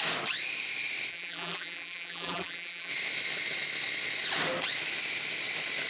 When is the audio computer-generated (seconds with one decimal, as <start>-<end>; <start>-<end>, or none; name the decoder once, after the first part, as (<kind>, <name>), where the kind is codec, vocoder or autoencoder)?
1.1-2.9 (vocoder, BigVGAN v2)